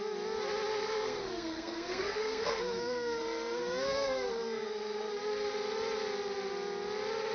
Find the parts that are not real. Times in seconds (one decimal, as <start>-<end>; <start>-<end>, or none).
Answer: 0.7-5.1

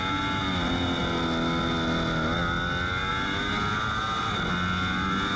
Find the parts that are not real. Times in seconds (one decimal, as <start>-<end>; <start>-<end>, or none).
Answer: none

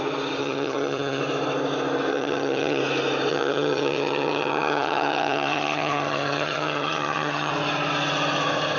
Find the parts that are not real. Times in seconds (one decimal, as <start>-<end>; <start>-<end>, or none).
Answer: 0.4-1.2; 2.1-2.8; 3.3-7.5

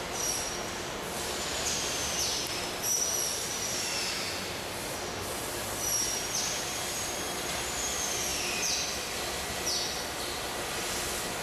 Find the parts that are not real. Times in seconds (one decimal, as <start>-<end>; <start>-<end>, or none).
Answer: none

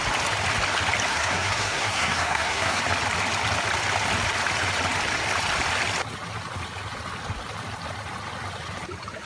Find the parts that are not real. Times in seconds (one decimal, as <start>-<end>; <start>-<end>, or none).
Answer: 1.1-2.8

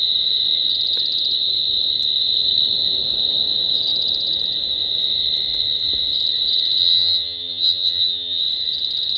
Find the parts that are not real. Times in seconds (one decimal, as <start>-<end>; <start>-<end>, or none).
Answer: 6.8-8.4

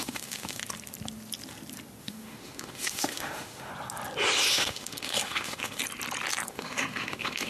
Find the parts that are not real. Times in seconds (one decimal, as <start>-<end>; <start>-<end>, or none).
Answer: 0.0-0.6; 2.0-3.7; 4.5-5.8; 6.5-7.5

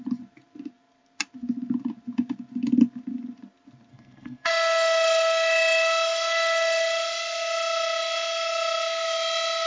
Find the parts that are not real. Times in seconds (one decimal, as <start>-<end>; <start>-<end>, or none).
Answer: 3.9-4.5